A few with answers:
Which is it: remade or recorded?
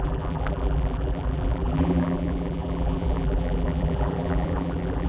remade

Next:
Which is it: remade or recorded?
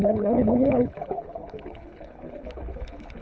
remade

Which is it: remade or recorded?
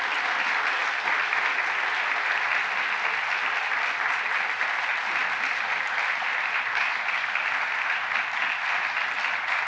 recorded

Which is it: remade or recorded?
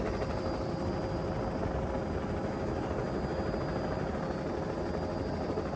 recorded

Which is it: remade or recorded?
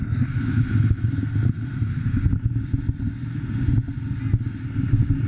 recorded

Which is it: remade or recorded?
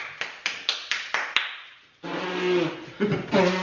recorded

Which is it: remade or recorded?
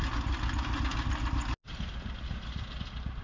recorded